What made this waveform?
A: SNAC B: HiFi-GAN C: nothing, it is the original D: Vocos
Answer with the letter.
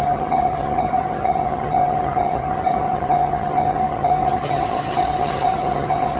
B